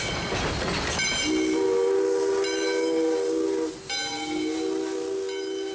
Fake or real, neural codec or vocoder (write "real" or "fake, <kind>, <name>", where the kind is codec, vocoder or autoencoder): real